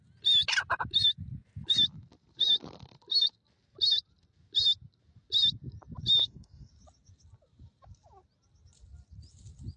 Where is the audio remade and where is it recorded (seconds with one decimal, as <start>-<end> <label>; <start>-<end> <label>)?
0.0-6.2 recorded; 6.2-6.7 remade; 6.7-9.8 recorded